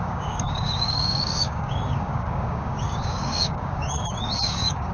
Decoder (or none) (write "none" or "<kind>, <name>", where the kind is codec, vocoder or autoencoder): codec, DAC